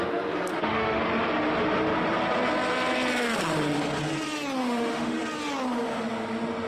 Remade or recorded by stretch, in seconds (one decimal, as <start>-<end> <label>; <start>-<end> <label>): 0.0-0.5 recorded; 0.5-1.0 remade; 1.0-4.6 recorded; 4.6-5.2 remade; 5.2-6.7 recorded